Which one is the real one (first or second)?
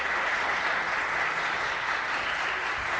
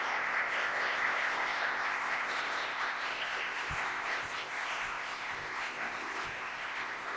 first